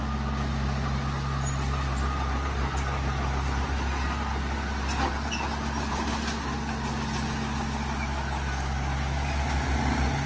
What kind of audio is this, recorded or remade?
recorded